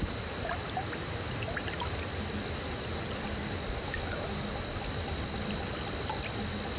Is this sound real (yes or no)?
yes